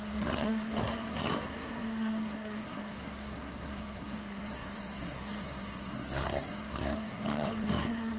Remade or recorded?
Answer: remade